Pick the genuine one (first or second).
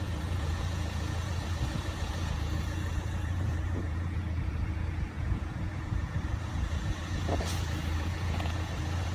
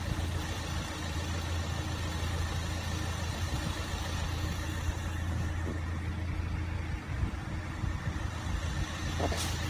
second